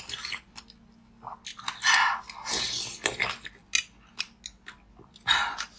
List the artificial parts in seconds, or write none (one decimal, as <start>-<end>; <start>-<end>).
5.2-5.8